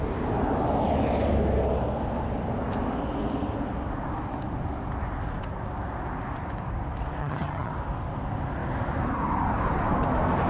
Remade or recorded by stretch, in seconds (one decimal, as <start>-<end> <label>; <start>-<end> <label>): 0.0-7.2 recorded; 7.2-7.7 remade; 7.7-10.5 recorded